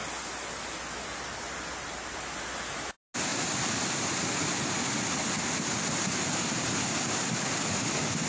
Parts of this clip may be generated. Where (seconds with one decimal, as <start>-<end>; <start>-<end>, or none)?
none